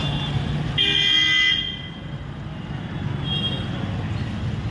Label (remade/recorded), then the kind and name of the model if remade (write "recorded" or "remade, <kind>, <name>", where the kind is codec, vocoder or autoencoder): recorded